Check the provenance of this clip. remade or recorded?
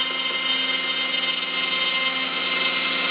recorded